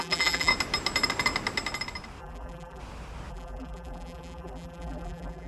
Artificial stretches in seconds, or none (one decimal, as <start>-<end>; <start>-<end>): 0.0-0.5; 2.2-2.8; 3.3-5.5